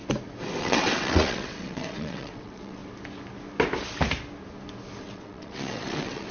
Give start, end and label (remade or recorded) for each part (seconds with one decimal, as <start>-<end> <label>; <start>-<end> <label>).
0.0-0.6 recorded; 0.6-2.8 remade; 2.8-5.0 recorded; 5.0-6.3 remade